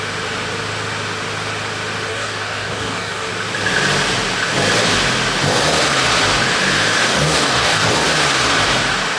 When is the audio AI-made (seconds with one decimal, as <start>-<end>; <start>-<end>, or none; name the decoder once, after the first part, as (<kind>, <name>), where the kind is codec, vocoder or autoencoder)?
2.1-3.3 (codec, DAC); 7.1-7.9